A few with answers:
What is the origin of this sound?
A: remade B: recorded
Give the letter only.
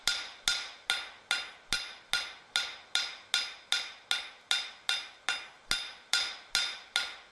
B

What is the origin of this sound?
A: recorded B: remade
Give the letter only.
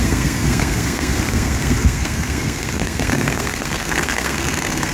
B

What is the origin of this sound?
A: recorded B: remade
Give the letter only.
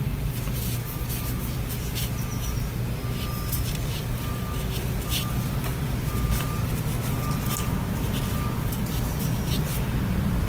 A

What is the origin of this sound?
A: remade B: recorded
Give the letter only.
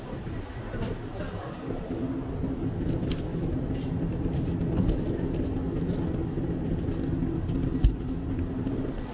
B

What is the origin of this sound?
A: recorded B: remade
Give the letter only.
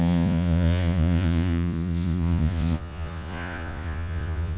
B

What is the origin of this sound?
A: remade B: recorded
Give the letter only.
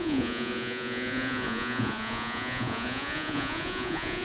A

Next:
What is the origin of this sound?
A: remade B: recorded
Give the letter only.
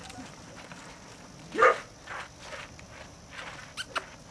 B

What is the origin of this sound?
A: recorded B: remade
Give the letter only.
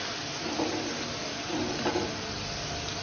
A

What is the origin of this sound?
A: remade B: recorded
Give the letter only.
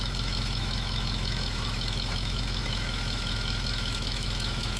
A